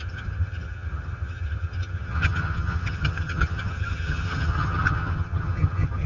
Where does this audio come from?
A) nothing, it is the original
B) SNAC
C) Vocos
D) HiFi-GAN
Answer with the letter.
D